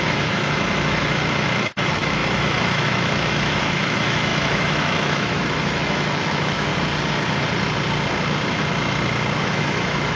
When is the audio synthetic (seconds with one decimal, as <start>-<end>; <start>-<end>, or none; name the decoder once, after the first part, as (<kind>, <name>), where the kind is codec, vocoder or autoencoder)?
0.0-6.7 (autoencoder, DAC-VAE); 9.4-10.2